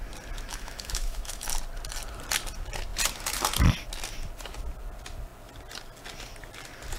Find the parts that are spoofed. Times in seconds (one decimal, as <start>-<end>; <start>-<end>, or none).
0.5-1.4